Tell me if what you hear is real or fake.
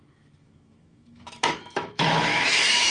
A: fake